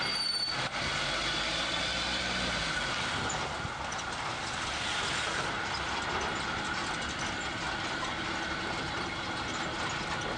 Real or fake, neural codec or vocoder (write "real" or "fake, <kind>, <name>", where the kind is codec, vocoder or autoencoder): real